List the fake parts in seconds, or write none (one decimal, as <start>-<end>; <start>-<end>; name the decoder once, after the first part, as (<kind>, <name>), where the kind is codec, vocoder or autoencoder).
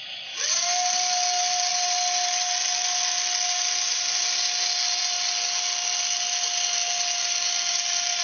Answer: none